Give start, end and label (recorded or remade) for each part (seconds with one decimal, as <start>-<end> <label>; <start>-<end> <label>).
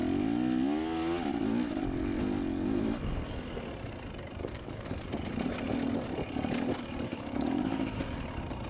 0.0-4.4 recorded; 4.4-5.0 remade; 5.0-7.1 recorded; 7.1-8.0 remade; 8.0-8.7 recorded